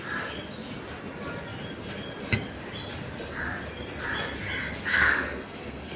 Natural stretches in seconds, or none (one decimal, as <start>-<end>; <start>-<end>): 0.0-4.9